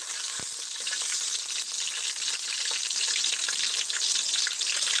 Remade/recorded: recorded